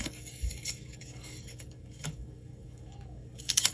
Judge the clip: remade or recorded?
remade